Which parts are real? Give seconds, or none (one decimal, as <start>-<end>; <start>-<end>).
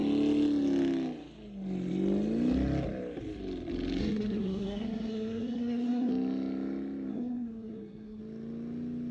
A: 0.0-4.0; 6.1-7.1; 8.2-9.1